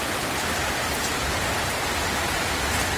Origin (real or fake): real